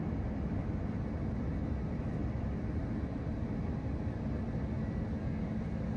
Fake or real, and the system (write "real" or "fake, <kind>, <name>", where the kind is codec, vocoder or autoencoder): real